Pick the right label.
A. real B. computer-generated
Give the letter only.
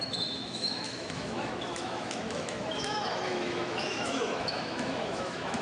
B